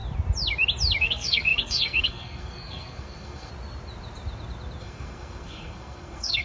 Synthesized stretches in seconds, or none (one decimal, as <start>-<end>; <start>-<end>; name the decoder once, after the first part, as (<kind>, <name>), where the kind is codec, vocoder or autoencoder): 1.0-3.5 (codec, SNAC); 4.8-6.4